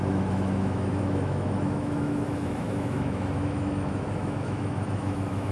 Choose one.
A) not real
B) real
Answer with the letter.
A